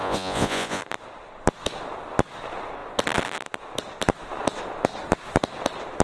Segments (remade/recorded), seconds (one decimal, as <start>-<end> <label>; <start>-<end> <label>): 0.0-0.8 remade; 0.8-6.0 recorded